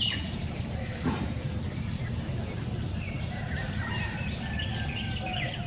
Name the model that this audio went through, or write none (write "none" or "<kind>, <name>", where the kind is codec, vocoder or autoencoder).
vocoder, BigVGAN v2